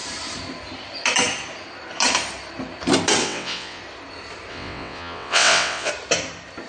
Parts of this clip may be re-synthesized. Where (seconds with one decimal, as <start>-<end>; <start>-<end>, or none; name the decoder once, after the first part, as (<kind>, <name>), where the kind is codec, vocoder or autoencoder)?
3.2-3.8 (vocoder, WaveNeXt); 4.5-5.9